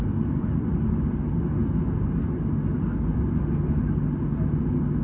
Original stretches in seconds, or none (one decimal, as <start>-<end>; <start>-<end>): 0.0-5.0